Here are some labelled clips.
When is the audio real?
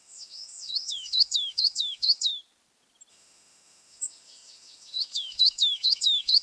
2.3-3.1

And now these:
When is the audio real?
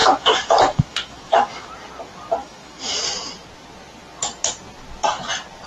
1.7-2.4; 3.0-5.7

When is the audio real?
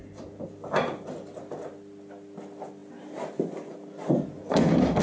0.0-5.0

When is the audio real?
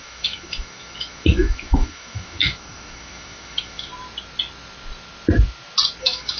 3.9-6.0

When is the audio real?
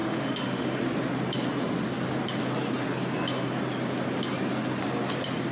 0.8-5.5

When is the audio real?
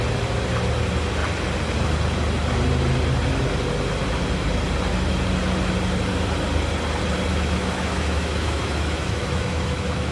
0.0-7.3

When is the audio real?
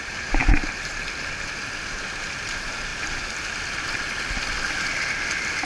0.0-5.7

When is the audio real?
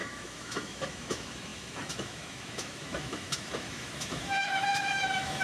none